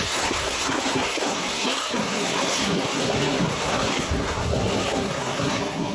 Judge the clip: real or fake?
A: fake